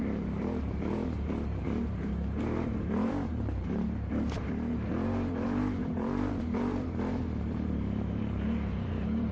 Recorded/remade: remade